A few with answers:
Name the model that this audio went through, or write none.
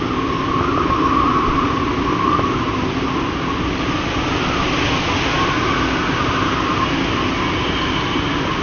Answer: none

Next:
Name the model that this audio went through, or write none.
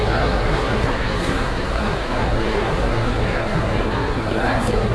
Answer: codec, SNAC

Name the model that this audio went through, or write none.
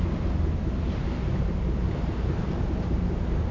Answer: none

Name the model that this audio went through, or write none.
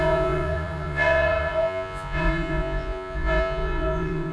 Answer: vocoder, Vocos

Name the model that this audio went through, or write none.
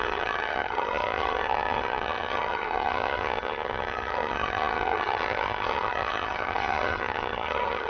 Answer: vocoder, HiFi-GAN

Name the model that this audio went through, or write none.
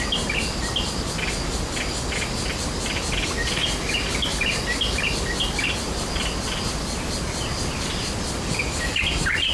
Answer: none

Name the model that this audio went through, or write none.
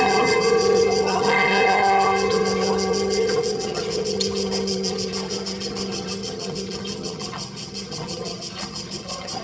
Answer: vocoder, HiFi-GAN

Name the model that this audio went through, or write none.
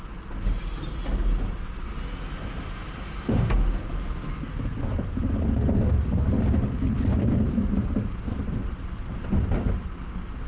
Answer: none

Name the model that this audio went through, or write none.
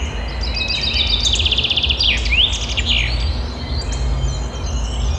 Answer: none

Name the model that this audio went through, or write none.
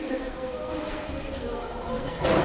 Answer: codec, SNAC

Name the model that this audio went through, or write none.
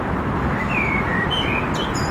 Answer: vocoder, BigVGAN v2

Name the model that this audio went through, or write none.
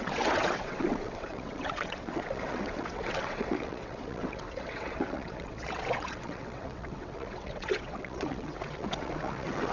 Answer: vocoder, WaveNeXt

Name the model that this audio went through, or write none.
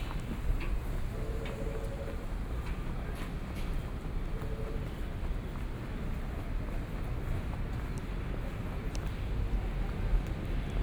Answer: none